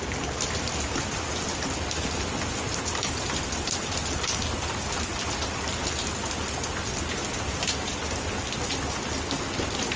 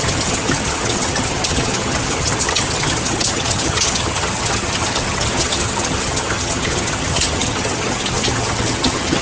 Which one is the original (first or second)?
first